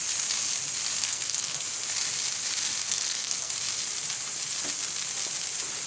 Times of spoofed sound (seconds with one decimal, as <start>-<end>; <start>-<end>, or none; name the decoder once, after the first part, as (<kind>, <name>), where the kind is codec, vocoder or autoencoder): 1.0-1.6 (codec, SNAC); 2.8-3.5